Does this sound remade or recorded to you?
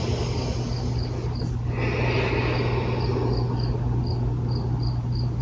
recorded